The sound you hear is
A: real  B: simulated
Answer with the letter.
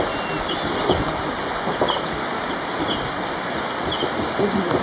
A